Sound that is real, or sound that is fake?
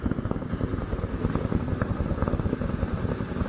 real